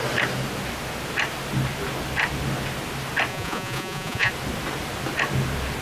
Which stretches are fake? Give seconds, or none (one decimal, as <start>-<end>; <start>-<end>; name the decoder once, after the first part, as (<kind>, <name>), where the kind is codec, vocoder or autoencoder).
3.3-4.3 (vocoder, Vocos)

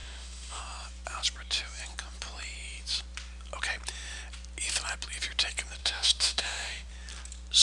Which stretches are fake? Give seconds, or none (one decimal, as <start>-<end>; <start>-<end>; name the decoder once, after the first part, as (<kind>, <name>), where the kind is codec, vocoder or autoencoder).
0.0-0.6 (autoencoder, DAC-VAE); 5.8-6.9

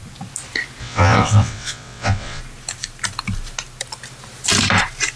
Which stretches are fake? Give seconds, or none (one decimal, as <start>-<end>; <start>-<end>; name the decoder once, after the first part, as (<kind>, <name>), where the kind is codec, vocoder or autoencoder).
0.8-2.4 (vocoder, WaveNeXt)

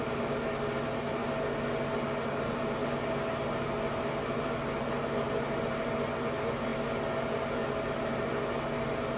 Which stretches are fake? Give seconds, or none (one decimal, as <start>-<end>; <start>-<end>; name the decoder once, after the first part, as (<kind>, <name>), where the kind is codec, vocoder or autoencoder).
none

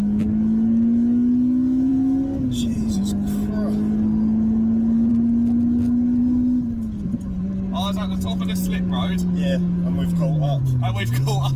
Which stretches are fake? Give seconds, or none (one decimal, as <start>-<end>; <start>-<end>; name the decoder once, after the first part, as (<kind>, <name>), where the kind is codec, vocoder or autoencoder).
none